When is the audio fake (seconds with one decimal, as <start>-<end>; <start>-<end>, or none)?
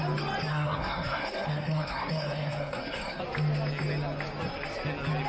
0.5-3.2